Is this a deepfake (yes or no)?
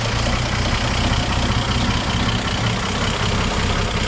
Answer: no